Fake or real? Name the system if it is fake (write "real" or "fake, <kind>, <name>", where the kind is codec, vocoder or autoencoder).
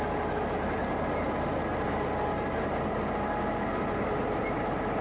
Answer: real